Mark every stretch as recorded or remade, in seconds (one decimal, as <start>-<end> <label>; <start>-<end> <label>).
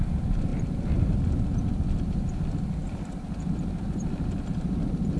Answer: 0.0-5.2 recorded